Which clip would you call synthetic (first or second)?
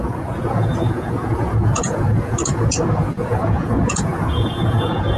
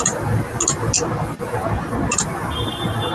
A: first